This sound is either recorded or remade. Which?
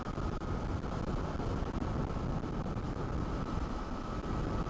recorded